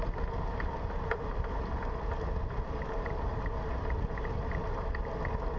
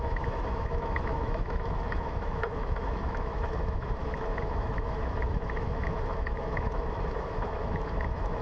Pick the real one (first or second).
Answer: first